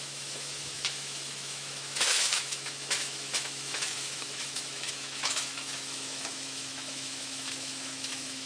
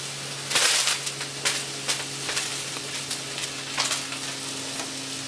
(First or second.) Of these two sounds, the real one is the second